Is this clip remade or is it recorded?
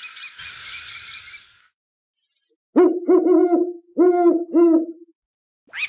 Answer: recorded